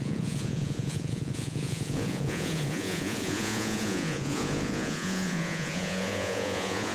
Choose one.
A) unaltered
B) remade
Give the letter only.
B